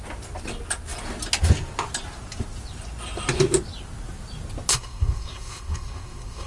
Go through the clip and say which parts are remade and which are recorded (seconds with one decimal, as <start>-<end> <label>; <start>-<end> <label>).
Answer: 0.0-4.7 recorded; 4.7-6.5 remade

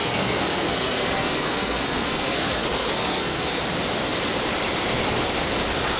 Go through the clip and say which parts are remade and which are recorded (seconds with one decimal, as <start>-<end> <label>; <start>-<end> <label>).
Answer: 0.0-3.6 remade; 3.6-6.0 recorded

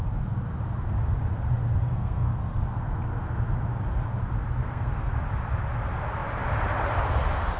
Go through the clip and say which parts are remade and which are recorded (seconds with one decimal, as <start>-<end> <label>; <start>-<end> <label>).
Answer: 0.0-1.8 recorded; 1.8-2.6 remade; 2.6-4.6 recorded; 4.6-5.2 remade; 5.2-7.6 recorded

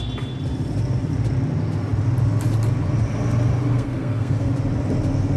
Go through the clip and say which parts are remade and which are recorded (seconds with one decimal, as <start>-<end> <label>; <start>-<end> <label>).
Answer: 0.0-3.7 recorded; 3.7-4.5 remade; 4.5-5.4 recorded

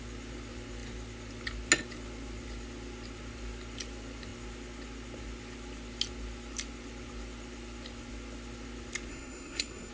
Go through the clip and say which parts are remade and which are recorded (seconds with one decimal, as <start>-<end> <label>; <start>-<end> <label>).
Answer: 0.0-9.1 recorded; 9.1-9.9 remade